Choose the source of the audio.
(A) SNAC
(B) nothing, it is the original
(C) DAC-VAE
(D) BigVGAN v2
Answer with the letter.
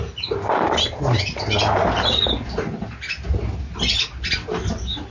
B